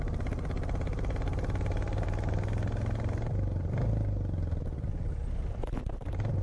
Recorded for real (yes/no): yes